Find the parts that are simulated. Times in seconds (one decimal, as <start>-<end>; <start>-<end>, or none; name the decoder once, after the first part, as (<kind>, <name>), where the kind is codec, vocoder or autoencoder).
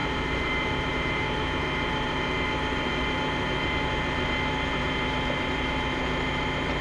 0.0-6.8 (vocoder, BigVGAN v2)